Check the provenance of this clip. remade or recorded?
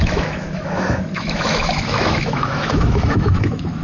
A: remade